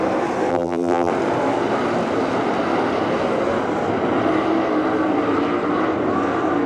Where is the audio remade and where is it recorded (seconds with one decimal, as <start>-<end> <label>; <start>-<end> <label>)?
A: 0.0-0.5 recorded; 0.5-1.1 remade; 1.1-6.7 recorded